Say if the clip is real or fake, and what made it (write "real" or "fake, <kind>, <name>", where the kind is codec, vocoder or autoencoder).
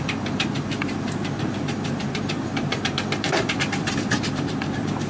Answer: fake, vocoder, BigVGAN v2